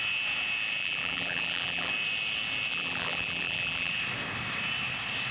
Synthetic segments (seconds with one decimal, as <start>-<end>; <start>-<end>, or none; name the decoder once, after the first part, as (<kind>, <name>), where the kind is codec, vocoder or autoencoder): 0.8-1.9 (vocoder, BigVGAN v2); 2.7-3.9